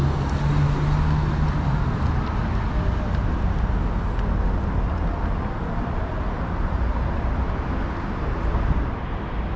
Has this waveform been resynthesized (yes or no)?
no